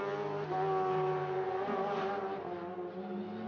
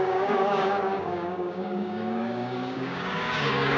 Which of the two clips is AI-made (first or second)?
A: second